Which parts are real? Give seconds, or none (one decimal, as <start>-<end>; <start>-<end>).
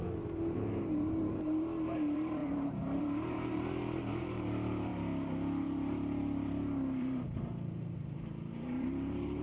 4.9-5.6